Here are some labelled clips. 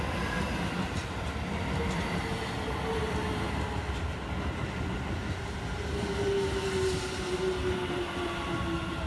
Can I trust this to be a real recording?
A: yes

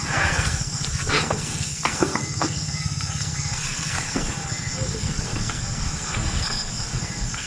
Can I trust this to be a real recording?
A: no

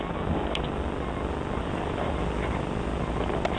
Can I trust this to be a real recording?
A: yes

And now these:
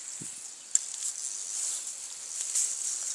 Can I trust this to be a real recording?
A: yes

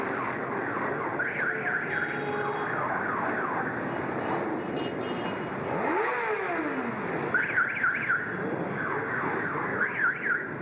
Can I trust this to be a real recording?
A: yes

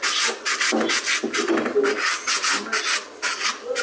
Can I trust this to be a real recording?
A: yes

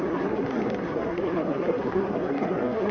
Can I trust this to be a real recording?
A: no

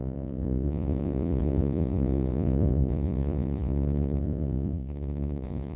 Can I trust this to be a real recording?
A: no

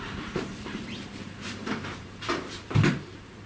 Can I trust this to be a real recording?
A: no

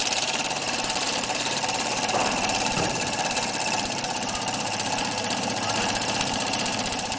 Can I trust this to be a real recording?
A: no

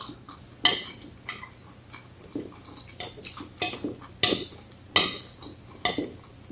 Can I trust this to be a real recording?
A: yes